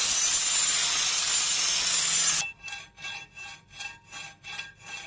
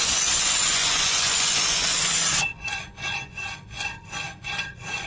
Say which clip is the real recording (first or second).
first